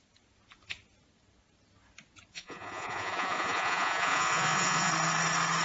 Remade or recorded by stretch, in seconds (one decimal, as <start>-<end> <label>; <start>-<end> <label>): 0.0-2.3 recorded; 2.3-4.9 remade; 4.9-5.6 recorded